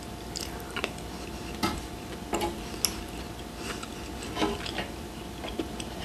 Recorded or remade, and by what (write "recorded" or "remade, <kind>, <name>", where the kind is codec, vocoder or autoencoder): recorded